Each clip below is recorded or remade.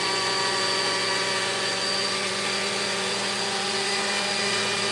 remade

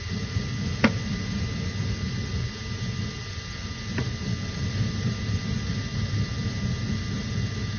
recorded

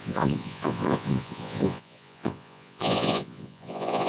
remade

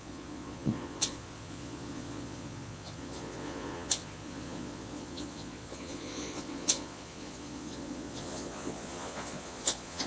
remade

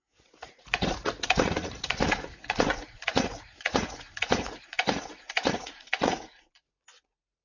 remade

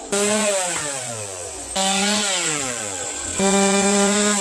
remade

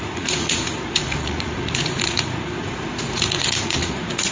remade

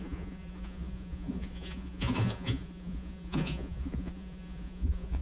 remade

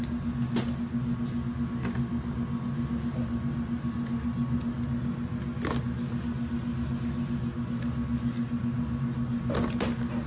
recorded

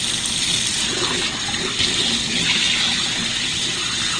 recorded